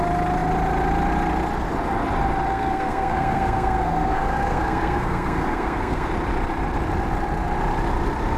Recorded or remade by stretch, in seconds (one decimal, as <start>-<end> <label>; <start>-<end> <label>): 0.0-2.5 recorded; 2.5-6.1 remade; 6.1-8.4 recorded